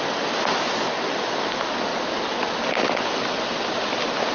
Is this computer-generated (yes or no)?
no